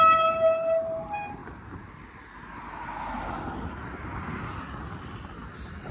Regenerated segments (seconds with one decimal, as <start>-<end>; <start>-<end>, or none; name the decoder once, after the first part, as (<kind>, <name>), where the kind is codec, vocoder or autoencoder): none